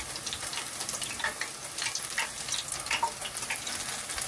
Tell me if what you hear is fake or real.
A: real